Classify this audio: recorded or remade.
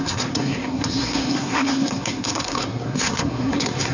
remade